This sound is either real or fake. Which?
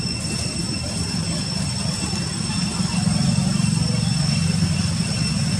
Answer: real